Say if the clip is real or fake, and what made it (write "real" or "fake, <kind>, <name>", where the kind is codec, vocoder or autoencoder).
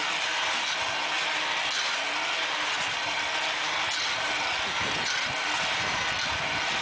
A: real